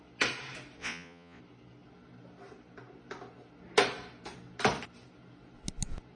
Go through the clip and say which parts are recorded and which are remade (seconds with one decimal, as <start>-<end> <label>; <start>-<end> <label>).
0.0-0.8 recorded; 0.8-1.4 remade; 1.4-6.2 recorded